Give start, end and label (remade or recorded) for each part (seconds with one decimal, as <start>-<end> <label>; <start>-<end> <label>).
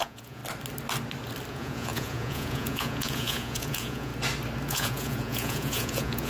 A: 0.0-0.4 remade; 0.4-1.5 recorded; 1.5-4.1 remade; 4.1-4.7 recorded; 4.7-6.3 remade